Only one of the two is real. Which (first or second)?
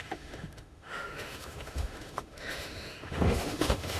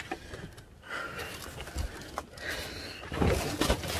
second